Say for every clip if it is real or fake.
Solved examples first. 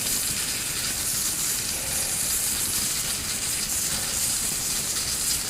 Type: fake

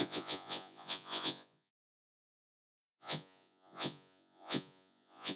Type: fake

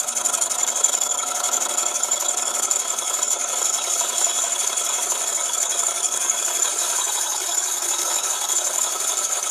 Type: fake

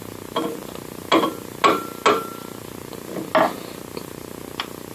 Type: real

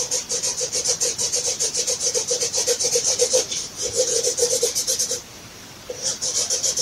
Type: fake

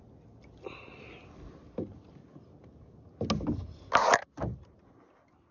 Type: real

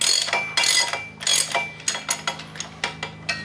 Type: real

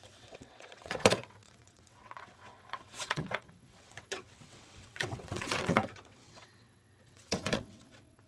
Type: fake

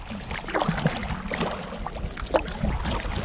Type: real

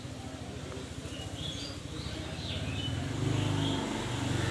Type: real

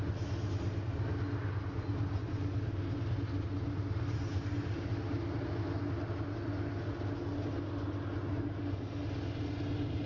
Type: real